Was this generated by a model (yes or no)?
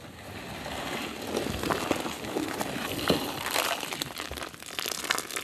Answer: no